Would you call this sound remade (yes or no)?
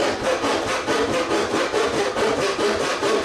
no